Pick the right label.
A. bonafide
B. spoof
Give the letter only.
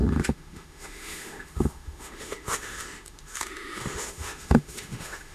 B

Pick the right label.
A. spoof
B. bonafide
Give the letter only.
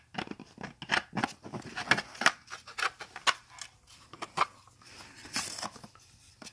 B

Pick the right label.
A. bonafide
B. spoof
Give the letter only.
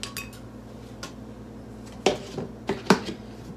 A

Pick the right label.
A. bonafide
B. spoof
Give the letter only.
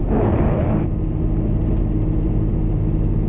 A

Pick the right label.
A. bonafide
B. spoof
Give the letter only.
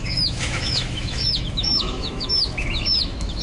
B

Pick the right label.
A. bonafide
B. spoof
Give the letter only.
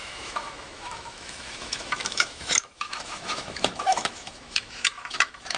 B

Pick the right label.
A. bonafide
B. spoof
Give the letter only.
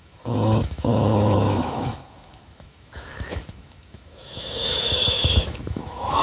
B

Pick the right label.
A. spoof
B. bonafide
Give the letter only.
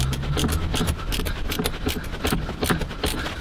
B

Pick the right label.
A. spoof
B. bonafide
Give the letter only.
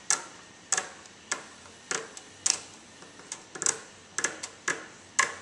B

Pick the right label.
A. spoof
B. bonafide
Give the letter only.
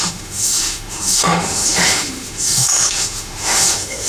A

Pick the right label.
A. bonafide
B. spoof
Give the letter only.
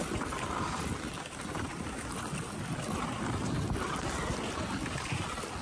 A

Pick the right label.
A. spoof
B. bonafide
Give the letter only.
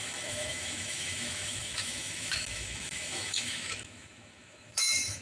A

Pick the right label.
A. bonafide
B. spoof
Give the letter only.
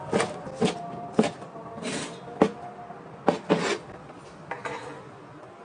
A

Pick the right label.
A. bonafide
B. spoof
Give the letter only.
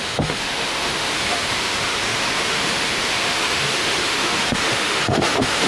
B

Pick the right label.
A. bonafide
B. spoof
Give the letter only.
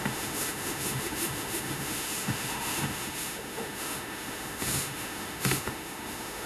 B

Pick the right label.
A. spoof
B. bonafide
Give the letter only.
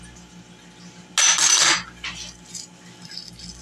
B